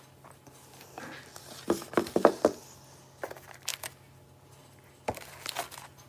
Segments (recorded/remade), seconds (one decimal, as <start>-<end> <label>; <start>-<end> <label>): 0.0-6.1 recorded